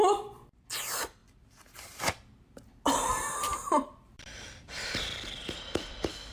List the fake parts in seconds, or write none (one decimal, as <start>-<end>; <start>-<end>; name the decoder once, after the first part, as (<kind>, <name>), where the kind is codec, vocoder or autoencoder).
0.0-1.2 (vocoder, BigVGAN v2); 2.7-6.3